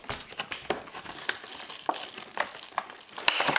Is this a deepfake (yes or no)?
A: no